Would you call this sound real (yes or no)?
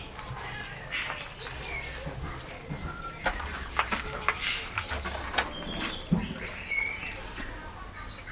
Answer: yes